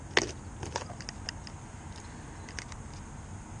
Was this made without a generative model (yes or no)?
yes